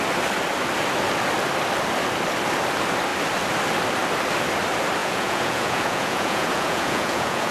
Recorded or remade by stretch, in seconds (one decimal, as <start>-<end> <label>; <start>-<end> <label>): 0.0-5.0 recorded; 5.0-7.5 remade